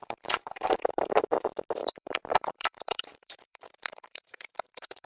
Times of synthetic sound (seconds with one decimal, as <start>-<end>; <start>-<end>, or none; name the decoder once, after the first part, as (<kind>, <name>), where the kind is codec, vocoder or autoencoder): 0.0-1.1 (vocoder, BigVGAN v2); 1.8-5.1